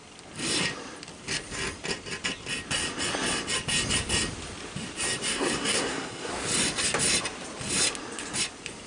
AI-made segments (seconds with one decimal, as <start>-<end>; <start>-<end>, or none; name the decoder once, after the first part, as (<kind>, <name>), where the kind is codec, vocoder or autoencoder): 5.3-6.3 (codec, SNAC)